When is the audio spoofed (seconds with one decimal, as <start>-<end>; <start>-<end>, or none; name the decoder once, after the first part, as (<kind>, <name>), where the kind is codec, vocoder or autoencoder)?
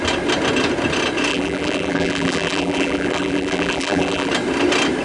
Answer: 1.3-4.3 (vocoder, BigVGAN v2)